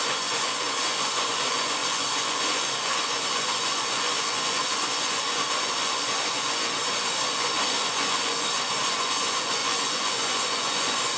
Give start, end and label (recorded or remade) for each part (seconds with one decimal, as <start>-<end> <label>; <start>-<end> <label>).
0.0-11.2 remade